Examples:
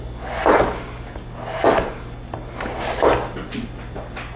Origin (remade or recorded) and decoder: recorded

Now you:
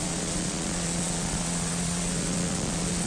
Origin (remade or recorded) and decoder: remade, vocoder, Vocos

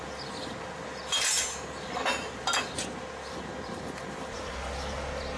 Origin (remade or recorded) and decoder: recorded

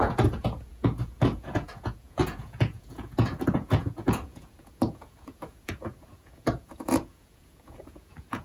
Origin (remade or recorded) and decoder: remade, vocoder, Vocos